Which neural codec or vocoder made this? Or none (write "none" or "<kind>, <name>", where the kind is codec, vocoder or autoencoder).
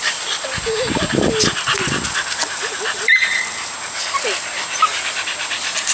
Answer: none